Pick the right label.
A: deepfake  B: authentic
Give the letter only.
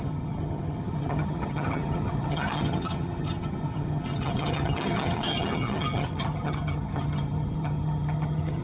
A